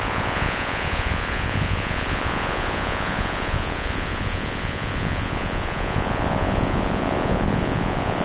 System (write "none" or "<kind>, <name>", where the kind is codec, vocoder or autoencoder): vocoder, Vocos